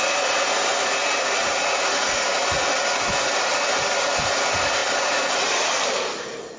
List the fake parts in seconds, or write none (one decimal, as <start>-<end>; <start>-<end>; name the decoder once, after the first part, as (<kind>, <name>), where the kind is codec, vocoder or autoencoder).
none

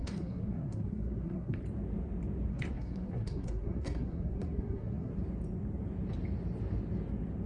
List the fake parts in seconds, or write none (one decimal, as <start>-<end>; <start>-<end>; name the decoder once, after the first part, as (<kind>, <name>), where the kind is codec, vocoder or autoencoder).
0.0-1.6 (codec, SNAC); 2.5-5.1